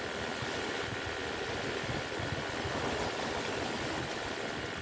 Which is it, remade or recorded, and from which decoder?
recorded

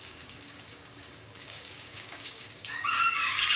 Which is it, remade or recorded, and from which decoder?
remade, codec, DAC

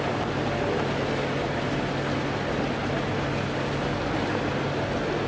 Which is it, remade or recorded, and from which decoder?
recorded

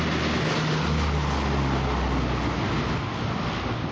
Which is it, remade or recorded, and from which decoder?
recorded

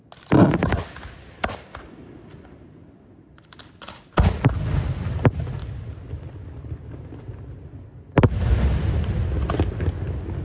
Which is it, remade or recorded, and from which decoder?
recorded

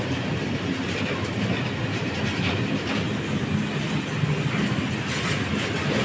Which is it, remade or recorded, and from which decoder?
recorded